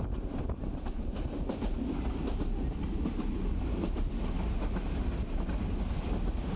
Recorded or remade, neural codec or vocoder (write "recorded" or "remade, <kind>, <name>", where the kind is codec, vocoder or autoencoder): recorded